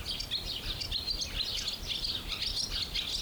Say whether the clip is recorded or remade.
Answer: recorded